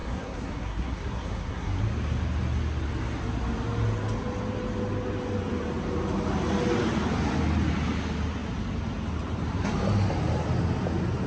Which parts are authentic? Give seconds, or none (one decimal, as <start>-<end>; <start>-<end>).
1.8-11.3